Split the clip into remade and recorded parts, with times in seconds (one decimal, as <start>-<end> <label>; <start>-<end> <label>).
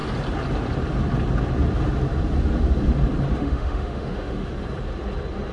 0.0-3.4 recorded; 3.4-4.5 remade; 4.5-5.5 recorded